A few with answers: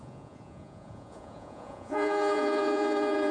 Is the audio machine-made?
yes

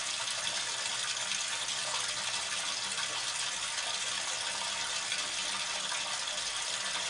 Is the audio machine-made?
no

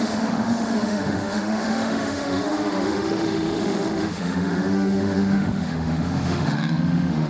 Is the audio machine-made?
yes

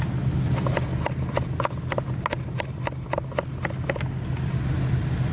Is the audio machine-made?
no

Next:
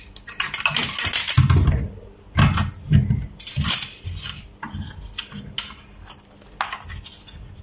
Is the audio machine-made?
no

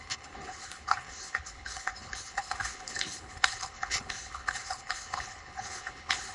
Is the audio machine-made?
yes